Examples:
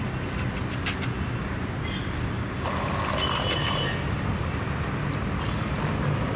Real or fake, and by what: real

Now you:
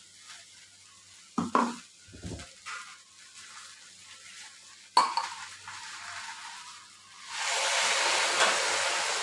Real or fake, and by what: real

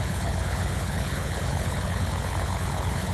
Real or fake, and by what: fake, codec, HILCodec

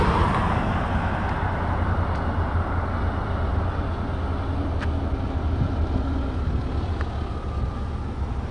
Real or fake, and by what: real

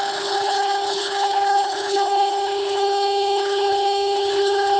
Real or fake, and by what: fake, codec, HILCodec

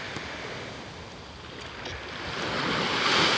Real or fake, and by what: real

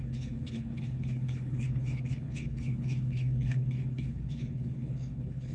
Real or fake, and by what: fake, codec, HILCodec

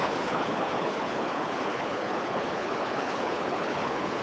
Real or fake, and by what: fake, codec, HILCodec